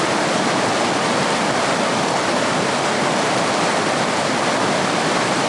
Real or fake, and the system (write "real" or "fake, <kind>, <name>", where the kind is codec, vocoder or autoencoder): real